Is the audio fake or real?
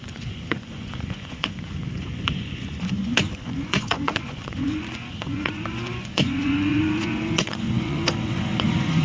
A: fake